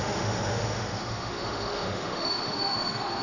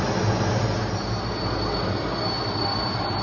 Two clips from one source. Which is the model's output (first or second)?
first